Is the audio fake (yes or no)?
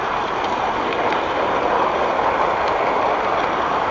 yes